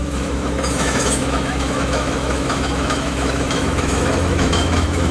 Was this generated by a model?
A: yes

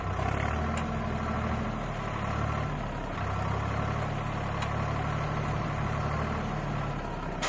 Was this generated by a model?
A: no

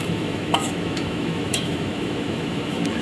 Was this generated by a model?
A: yes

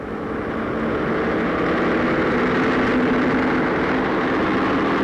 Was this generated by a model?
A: no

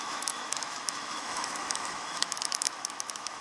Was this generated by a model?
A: yes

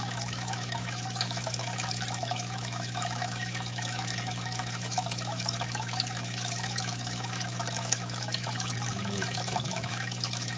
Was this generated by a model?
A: yes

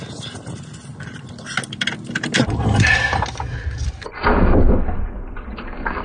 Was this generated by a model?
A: no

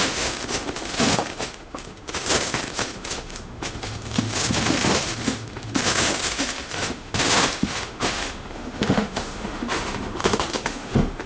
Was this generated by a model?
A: yes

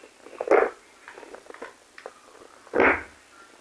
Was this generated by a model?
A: no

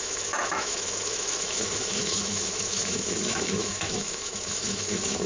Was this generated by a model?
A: yes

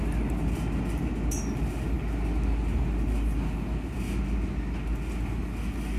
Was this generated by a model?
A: no